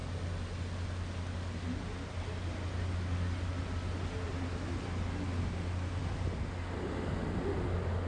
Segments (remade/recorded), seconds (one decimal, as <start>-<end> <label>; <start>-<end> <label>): 0.0-8.1 recorded

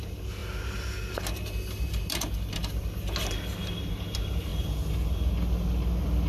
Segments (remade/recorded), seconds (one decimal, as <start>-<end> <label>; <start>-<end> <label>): 0.0-6.3 recorded

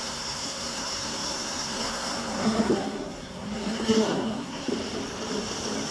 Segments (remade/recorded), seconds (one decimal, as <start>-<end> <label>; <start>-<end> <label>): 0.0-4.7 remade; 4.7-5.9 recorded

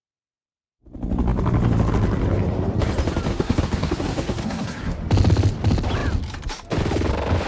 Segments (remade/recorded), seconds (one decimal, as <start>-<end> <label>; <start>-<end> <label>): 0.0-3.3 recorded; 3.3-5.0 remade; 5.0-7.5 recorded

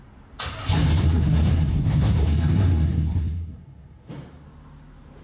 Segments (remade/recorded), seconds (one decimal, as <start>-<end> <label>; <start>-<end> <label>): 0.0-1.0 recorded; 1.0-4.1 remade; 4.1-5.2 recorded

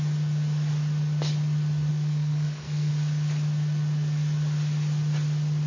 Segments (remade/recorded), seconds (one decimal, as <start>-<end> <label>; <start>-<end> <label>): 0.0-1.9 recorded; 1.9-2.9 remade; 2.9-5.7 recorded

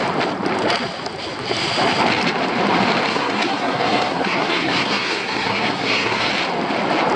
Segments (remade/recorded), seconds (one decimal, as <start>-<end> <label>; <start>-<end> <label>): 0.0-3.1 recorded; 3.1-6.3 remade; 6.3-7.2 recorded

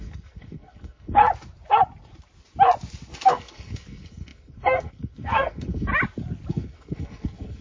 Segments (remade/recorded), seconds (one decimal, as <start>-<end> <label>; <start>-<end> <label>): 0.0-1.2 remade; 1.2-3.3 recorded; 3.3-5.9 remade; 5.9-6.5 recorded; 6.5-7.6 remade